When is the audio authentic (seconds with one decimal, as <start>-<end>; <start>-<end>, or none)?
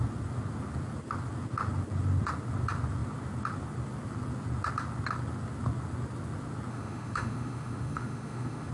0.0-6.7